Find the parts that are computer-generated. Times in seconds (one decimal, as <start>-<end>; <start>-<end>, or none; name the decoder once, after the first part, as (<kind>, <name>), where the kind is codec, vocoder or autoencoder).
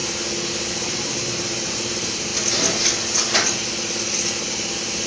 0.7-2.3 (vocoder, BigVGAN v2)